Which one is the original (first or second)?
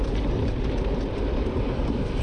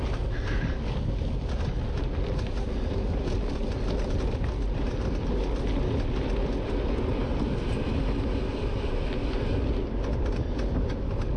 second